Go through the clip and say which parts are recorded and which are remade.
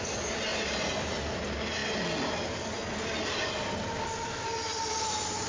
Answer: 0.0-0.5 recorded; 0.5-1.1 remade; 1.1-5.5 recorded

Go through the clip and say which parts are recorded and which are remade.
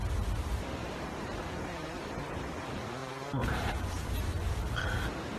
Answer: 0.0-0.8 recorded; 0.8-2.4 remade; 2.4-3.0 recorded; 3.0-4.2 remade; 4.2-5.4 recorded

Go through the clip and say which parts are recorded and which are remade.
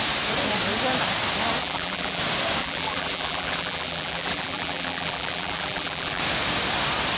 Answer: 0.0-1.6 recorded; 1.6-2.2 remade; 2.2-2.6 recorded; 2.6-6.2 remade; 6.2-7.2 recorded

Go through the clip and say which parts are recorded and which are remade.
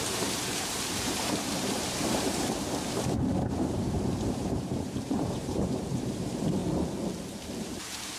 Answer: 0.0-6.6 remade; 6.6-7.6 recorded; 7.6-8.2 remade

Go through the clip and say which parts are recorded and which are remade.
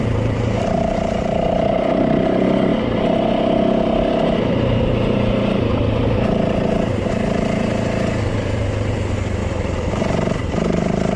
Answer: 0.0-2.7 remade; 2.7-4.5 recorded; 4.5-9.4 remade; 9.4-9.9 recorded; 9.9-11.2 remade